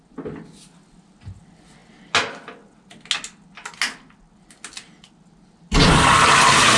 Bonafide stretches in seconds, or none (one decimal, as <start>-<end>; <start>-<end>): 0.0-6.8